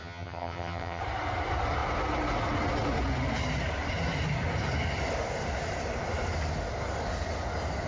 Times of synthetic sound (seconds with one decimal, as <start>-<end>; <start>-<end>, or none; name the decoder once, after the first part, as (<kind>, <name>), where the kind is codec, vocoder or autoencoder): 0.0-1.0 (vocoder, HiFi-GAN)